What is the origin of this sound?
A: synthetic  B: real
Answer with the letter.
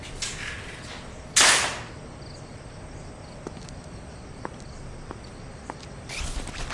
B